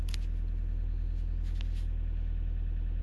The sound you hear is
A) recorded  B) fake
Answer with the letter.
A